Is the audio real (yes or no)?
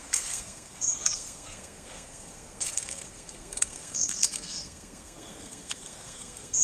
no